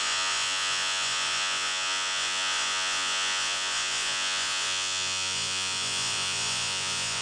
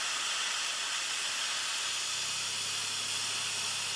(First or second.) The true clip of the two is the second